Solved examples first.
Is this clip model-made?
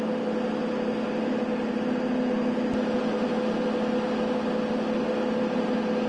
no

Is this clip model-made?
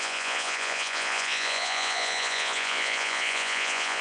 yes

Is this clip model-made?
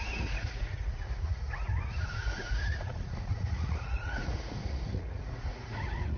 yes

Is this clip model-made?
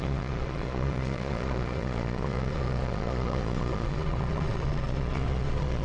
yes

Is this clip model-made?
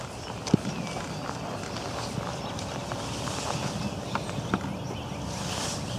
no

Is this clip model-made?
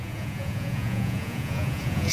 yes